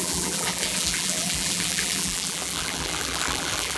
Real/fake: fake